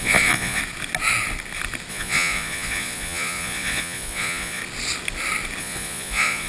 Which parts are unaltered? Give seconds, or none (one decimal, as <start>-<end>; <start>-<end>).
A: 0.6-1.9; 4.6-5.6